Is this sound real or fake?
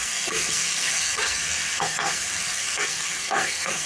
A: fake